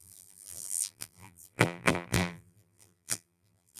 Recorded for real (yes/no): no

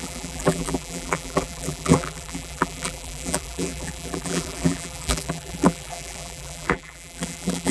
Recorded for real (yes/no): no